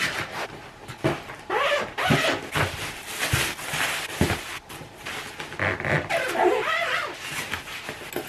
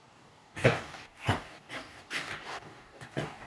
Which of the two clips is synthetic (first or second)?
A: second